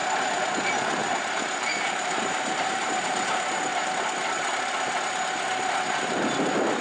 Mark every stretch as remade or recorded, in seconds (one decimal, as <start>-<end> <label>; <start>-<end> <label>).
0.0-1.0 recorded; 1.0-3.9 remade; 3.9-6.8 recorded